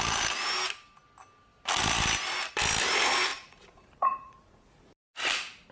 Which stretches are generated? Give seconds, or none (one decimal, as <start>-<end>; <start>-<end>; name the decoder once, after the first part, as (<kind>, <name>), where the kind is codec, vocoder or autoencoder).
3.3-4.9 (vocoder, Vocos)